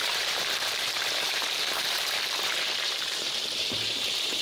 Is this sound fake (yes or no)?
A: yes